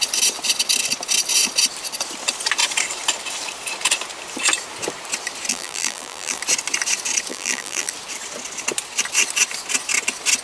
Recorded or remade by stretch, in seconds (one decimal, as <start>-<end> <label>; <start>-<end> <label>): 0.0-5.5 recorded; 5.5-6.4 remade; 6.4-7.3 recorded; 7.3-7.9 remade; 7.9-10.4 recorded

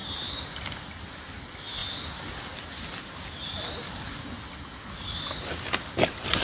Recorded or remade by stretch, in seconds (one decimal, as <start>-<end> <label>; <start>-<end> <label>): 0.0-6.4 recorded

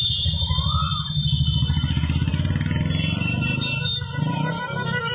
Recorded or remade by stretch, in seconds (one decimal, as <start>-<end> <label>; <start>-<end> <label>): 0.0-5.1 recorded

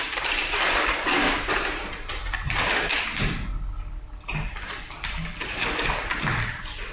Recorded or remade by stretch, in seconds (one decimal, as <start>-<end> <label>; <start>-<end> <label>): 0.0-6.9 recorded